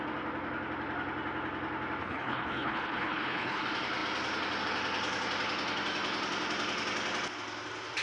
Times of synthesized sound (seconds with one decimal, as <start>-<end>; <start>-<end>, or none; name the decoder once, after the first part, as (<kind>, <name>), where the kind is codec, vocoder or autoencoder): 2.0-3.6 (codec, HILCodec)